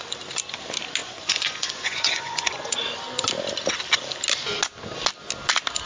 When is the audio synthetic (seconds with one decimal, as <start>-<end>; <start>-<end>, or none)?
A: 1.0-2.8